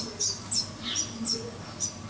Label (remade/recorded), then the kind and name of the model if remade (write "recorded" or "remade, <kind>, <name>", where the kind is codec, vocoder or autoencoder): recorded